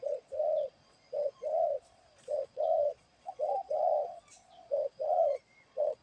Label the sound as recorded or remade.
remade